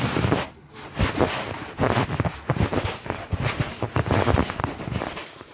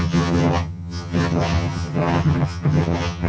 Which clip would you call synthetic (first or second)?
second